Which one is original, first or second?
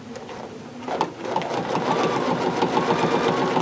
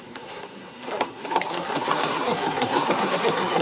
first